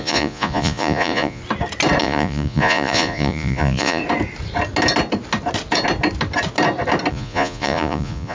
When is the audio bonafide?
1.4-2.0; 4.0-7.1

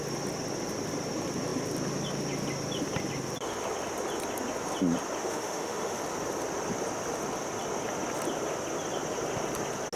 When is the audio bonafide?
0.0-5.2; 6.0-10.0

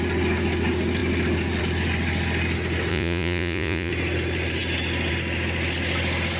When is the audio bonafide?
0.0-2.9; 3.9-6.4

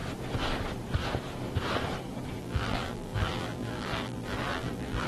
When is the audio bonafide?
0.0-2.4

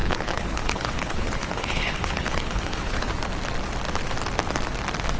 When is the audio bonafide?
3.1-5.2

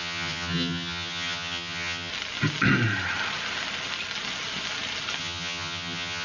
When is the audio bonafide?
2.1-5.2

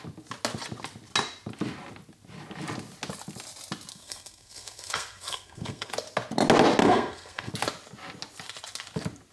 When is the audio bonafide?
0.0-3.9; 5.9-6.8; 7.5-9.3

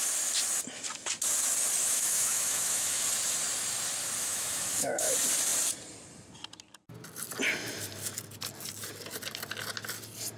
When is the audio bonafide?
0.0-1.8; 3.0-4.2; 5.1-10.4